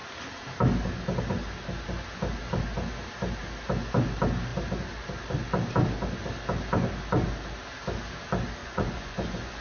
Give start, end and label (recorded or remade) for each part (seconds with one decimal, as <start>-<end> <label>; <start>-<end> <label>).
0.0-8.6 recorded; 8.6-9.6 remade